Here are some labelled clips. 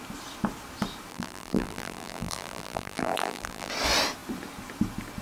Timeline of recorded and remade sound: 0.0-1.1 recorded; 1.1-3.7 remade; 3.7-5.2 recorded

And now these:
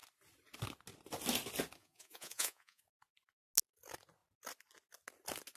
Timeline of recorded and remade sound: 0.0-1.8 recorded; 1.8-2.8 remade; 2.8-5.6 recorded